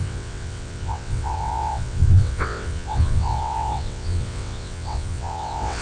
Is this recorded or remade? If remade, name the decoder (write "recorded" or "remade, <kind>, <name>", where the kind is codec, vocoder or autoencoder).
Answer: remade, vocoder, WaveNeXt